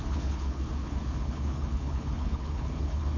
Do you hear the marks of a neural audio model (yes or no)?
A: yes